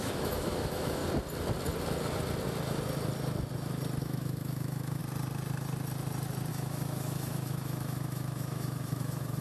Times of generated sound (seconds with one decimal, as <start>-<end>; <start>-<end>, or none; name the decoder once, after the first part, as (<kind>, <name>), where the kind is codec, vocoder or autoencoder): 0.0-1.0 (autoencoder, DAC-VAE); 4.0-5.0; 6.5-9.4